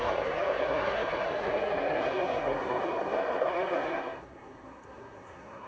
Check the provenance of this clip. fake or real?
fake